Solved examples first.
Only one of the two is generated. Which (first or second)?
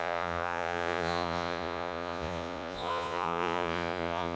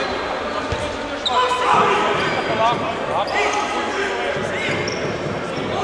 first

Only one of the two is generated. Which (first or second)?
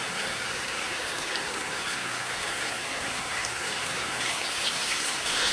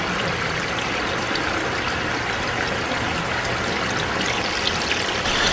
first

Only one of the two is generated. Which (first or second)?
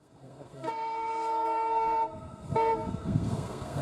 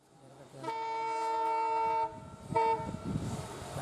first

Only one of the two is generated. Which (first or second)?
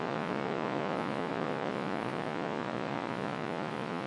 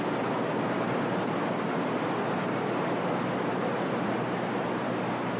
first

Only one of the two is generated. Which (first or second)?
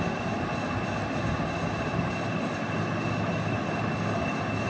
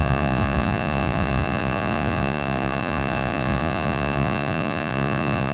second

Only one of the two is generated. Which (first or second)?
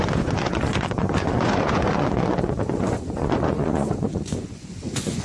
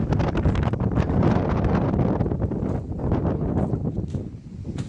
first